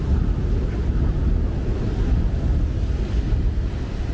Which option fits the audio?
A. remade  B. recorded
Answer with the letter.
B